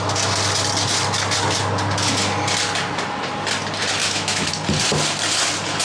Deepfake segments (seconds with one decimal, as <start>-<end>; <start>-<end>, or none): 4.0-4.5